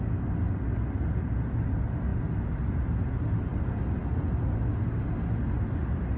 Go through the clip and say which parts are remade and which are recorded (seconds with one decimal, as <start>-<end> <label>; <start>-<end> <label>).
0.0-6.2 recorded

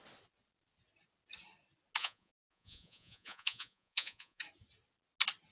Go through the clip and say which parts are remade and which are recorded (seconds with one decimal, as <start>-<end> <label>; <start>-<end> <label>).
0.0-2.0 recorded; 2.0-4.4 remade; 4.4-5.5 recorded

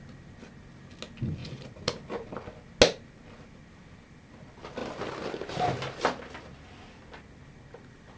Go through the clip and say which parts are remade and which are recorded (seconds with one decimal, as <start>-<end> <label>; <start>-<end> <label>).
0.0-8.2 recorded

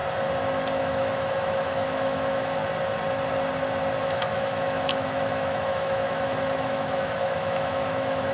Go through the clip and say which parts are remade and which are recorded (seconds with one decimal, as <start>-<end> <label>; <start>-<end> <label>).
0.0-0.8 recorded; 0.8-2.6 remade; 2.6-4.0 recorded; 4.0-8.3 remade